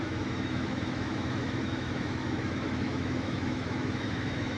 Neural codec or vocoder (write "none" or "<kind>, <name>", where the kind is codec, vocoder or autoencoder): autoencoder, DAC-VAE